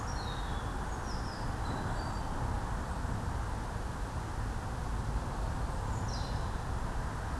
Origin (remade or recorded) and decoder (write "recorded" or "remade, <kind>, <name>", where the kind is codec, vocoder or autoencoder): recorded